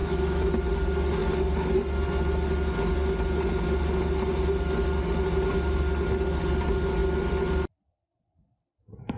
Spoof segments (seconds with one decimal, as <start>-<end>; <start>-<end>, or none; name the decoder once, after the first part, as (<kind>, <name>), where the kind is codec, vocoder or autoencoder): 0.0-0.5 (autoencoder, DAC-VAE)